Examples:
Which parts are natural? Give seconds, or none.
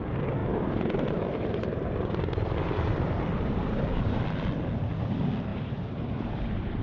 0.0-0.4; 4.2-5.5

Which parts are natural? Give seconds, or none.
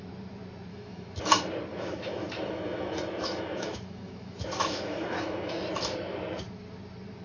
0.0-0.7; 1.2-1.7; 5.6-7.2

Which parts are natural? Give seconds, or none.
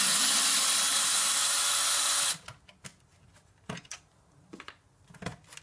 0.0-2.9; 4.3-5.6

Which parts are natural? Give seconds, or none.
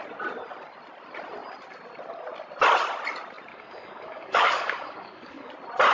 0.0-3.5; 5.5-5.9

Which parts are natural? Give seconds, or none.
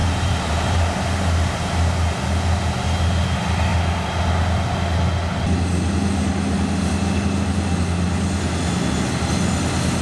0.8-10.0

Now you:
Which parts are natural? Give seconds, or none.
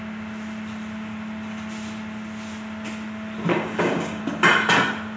0.0-3.5; 4.2-5.2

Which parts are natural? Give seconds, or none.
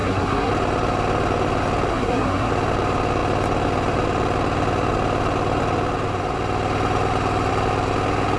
0.5-1.9; 2.5-8.4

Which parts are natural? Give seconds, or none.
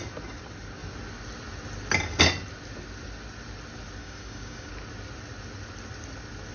0.0-4.0; 4.7-6.5